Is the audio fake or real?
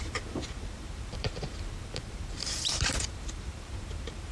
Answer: fake